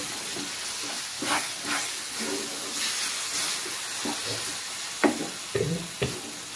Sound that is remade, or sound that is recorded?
recorded